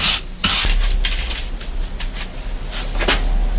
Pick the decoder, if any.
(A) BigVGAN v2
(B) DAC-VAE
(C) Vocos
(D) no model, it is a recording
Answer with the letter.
D